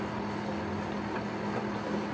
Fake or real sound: real